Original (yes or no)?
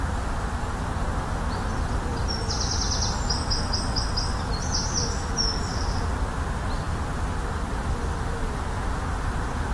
yes